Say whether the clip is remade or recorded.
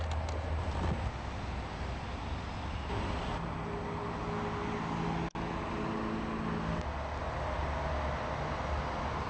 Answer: recorded